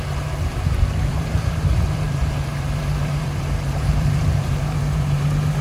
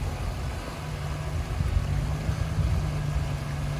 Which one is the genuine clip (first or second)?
second